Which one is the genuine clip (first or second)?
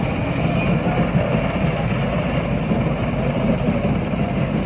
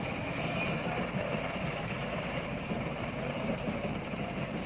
first